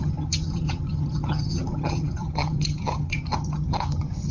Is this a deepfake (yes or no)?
yes